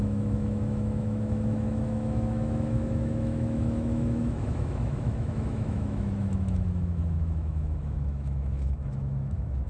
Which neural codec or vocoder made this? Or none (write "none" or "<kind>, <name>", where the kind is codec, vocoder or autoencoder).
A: autoencoder, DAC-VAE